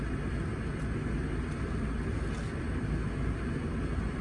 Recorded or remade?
recorded